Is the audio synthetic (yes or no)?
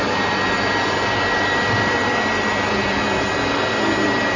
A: no